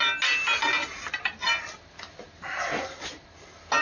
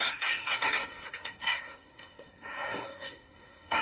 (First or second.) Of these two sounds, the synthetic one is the second